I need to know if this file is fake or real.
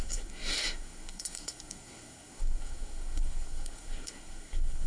fake